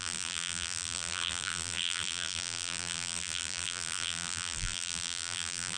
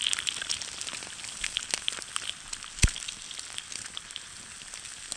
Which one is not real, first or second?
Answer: first